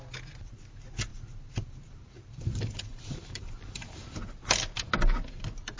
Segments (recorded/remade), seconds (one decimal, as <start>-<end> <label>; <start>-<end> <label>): 0.0-1.1 recorded; 1.1-4.6 remade; 4.6-5.8 recorded